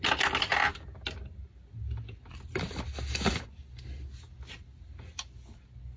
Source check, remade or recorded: recorded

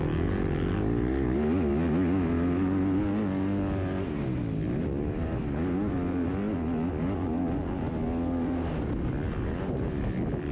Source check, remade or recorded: recorded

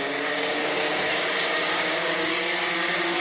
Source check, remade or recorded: remade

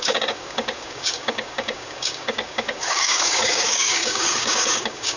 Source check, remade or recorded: remade